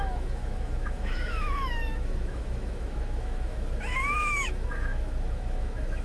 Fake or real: fake